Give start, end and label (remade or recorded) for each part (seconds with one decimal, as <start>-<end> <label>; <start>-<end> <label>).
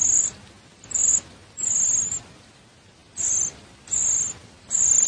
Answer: 0.0-5.1 recorded